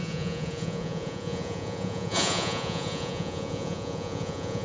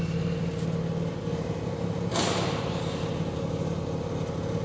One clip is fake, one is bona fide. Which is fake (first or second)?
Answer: first